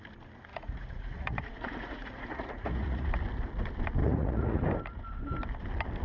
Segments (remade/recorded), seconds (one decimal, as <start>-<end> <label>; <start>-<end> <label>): 0.0-0.5 recorded; 0.5-3.1 remade; 3.1-4.0 recorded; 4.0-4.6 remade; 4.6-6.0 recorded